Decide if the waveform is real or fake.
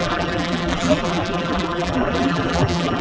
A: fake